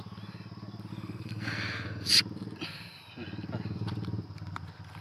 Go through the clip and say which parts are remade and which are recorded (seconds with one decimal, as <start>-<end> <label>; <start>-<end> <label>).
0.0-0.9 recorded; 0.9-2.1 remade; 2.1-5.0 recorded